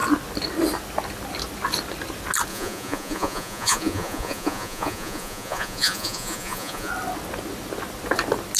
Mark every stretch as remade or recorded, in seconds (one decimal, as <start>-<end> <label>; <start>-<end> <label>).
0.0-2.5 recorded; 2.5-6.9 remade; 6.9-8.6 recorded